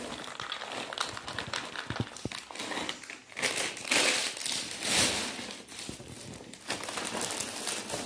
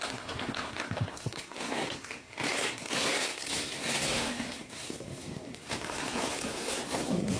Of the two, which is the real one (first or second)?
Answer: first